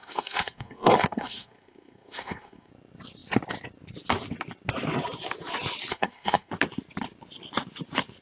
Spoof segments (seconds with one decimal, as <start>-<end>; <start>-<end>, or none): 0.0-2.7; 5.9-6.5